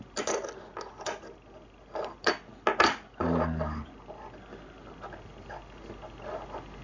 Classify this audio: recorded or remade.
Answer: recorded